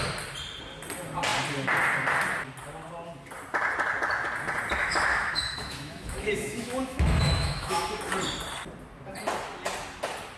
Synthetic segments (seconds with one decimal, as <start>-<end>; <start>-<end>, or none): 4.8-8.0